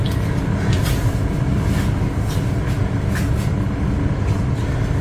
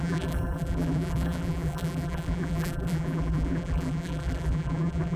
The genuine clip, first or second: first